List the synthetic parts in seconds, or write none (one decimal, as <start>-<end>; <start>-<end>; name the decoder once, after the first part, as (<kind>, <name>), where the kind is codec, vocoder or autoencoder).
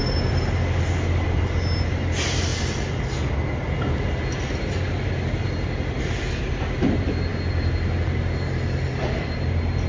none